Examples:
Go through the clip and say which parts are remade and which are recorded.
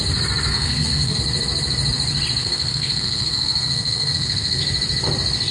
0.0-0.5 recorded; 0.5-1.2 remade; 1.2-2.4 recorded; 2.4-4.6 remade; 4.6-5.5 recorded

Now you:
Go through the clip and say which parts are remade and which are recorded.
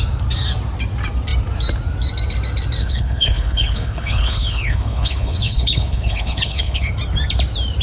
0.0-2.8 recorded; 2.8-6.9 remade; 6.9-7.8 recorded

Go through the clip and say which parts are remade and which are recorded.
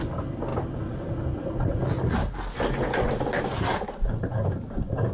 0.0-5.1 recorded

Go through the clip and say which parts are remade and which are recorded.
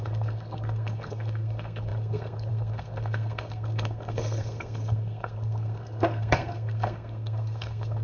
0.0-8.0 remade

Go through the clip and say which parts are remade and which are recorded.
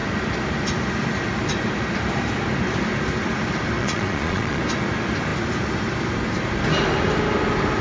0.0-3.8 recorded; 3.8-4.6 remade; 4.6-7.8 recorded